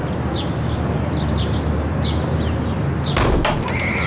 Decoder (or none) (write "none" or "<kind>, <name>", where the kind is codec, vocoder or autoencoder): none